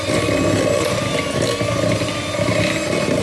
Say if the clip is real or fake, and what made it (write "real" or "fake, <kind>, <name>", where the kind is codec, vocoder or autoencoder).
real